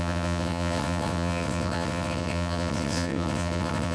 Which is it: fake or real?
fake